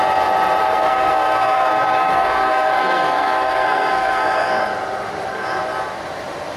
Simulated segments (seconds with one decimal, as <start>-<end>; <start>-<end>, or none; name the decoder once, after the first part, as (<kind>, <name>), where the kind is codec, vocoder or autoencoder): 0.6-4.6 (codec, SNAC)